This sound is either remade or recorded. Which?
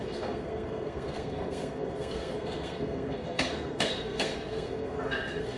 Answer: remade